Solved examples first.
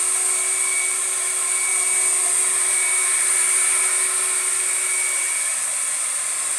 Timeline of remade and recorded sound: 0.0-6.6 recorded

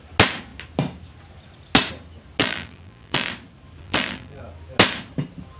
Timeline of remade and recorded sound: 0.0-2.4 recorded; 2.4-3.3 remade; 3.3-3.8 recorded; 3.8-4.4 remade; 4.4-5.6 recorded

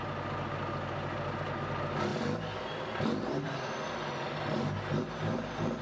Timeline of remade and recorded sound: 0.0-5.8 recorded

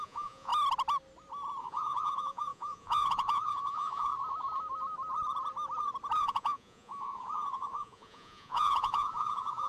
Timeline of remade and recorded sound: 0.0-0.5 remade; 0.5-1.6 recorded; 1.6-4.1 remade; 4.1-6.2 recorded; 6.2-9.7 remade